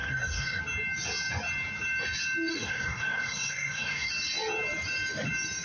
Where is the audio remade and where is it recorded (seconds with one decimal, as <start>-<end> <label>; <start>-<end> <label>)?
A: 0.0-0.6 remade; 0.6-2.5 recorded; 2.5-4.1 remade; 4.1-5.6 recorded